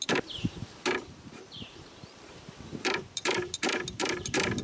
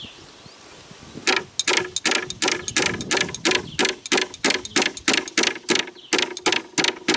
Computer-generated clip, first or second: first